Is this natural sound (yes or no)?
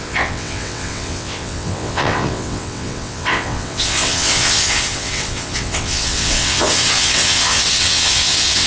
no